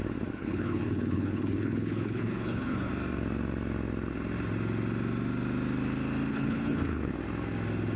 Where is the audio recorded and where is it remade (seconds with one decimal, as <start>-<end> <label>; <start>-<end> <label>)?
0.0-0.4 recorded; 0.4-2.9 remade; 2.9-6.3 recorded; 6.3-7.1 remade; 7.1-8.0 recorded